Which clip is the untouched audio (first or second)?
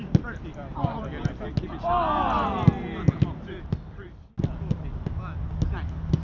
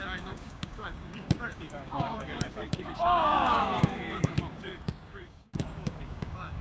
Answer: first